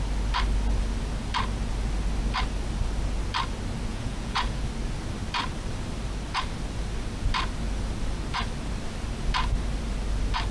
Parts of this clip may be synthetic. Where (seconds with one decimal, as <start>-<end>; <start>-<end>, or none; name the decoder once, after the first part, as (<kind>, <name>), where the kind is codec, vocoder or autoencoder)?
3.9-4.6 (vocoder, Vocos)